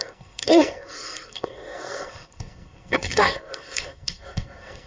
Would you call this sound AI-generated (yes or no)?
yes